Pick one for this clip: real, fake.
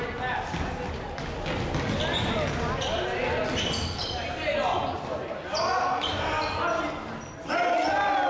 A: real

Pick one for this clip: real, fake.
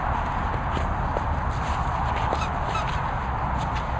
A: real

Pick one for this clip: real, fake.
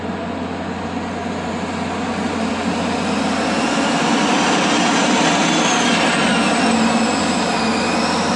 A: real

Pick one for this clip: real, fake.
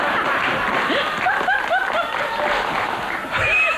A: real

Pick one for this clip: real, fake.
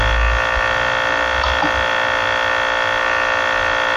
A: real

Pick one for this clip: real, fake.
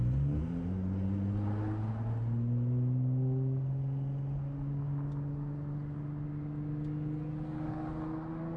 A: real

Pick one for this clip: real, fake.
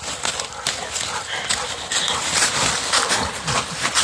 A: real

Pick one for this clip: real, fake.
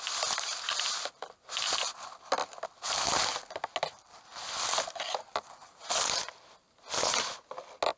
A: real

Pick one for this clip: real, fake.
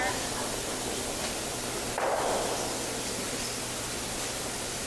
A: real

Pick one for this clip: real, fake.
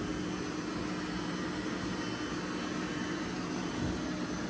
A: real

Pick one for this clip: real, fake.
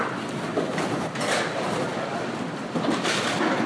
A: fake